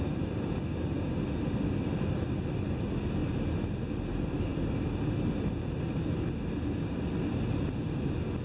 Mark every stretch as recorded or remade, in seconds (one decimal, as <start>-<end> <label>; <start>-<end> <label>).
0.0-8.4 recorded